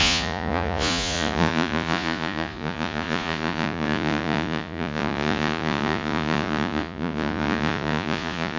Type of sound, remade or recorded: remade